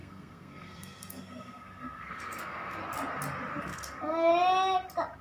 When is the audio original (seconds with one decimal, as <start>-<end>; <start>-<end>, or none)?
2.8-3.6; 4.3-5.2